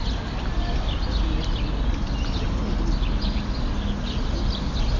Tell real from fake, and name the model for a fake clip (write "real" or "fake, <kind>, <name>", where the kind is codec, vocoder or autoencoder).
real